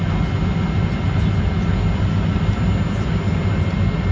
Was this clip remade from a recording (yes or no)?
no